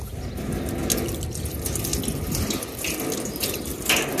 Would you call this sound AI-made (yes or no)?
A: no